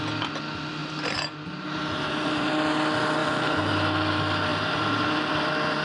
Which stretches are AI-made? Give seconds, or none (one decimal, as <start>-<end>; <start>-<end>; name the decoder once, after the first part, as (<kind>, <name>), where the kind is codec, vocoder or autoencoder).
0.8-2.5 (vocoder, BigVGAN v2); 3.2-3.7; 4.5-5.3